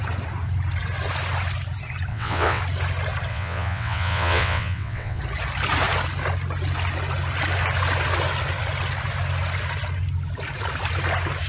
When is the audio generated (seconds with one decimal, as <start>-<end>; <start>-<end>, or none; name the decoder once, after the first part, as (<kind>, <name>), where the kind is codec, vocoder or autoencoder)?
2.1-2.6 (vocoder, WaveNeXt); 3.3-5.2

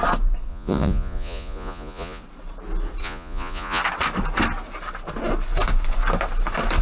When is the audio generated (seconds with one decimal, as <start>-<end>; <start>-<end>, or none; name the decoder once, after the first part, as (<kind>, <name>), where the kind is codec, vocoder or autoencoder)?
0.5-2.2 (vocoder, Vocos); 3.0-3.8

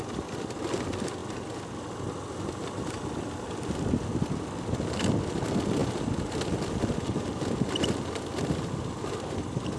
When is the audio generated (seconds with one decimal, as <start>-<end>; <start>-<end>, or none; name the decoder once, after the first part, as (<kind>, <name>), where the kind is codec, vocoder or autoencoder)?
none

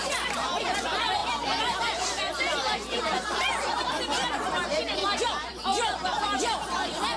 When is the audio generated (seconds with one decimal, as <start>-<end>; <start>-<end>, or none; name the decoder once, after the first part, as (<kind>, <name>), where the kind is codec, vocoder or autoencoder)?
0.0-7.2 (vocoder, BigVGAN v2)